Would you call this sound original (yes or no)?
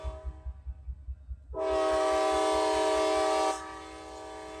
yes